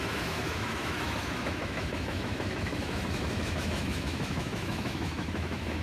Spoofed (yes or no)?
yes